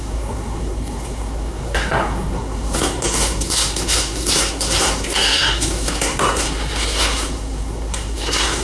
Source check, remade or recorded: remade